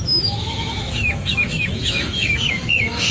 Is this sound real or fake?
fake